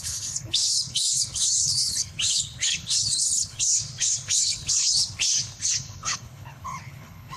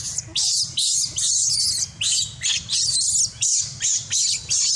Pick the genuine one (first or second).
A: second